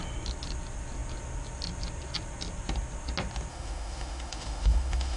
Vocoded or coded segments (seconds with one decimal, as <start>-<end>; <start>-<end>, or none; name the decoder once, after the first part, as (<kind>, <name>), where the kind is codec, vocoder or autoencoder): 3.5-5.2 (autoencoder, DAC-VAE)